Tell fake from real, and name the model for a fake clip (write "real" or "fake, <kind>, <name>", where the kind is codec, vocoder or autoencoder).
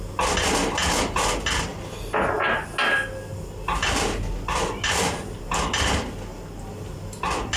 real